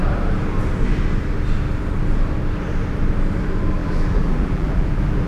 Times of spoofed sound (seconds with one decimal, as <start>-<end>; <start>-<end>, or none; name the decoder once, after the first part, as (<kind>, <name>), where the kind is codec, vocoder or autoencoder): 3.8-5.3 (vocoder, BigVGAN v2)